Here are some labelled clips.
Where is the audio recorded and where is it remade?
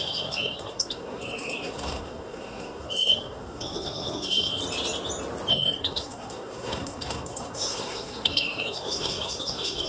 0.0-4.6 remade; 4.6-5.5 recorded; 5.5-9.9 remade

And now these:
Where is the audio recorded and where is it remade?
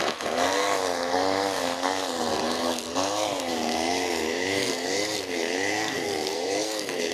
0.0-7.1 remade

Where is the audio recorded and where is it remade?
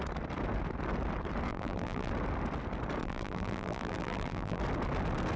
0.0-1.5 recorded; 1.5-2.1 remade; 2.1-3.0 recorded; 3.0-4.6 remade; 4.6-5.4 recorded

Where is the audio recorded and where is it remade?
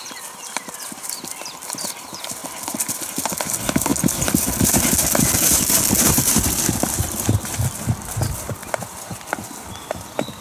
0.0-3.9 remade; 3.9-6.1 recorded; 6.1-8.6 remade; 8.6-9.5 recorded; 9.5-10.4 remade